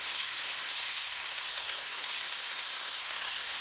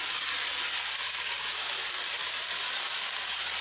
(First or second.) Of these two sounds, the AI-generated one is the first